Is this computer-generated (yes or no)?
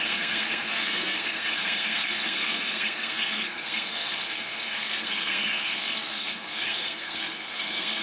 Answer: yes